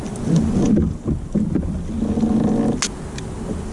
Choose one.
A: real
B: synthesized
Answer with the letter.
A